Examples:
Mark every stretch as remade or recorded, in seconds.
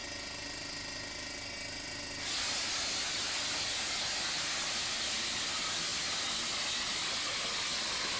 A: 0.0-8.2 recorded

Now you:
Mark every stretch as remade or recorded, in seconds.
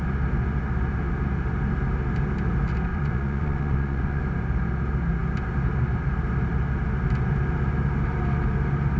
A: 0.0-2.9 recorded; 2.9-4.2 remade; 4.2-9.0 recorded